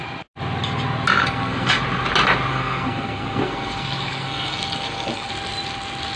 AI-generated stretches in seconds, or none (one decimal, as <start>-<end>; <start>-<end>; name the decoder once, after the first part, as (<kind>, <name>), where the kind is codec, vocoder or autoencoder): 1.2-1.7 (codec, SNAC); 2.5-5.3